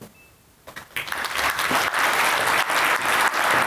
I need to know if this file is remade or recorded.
recorded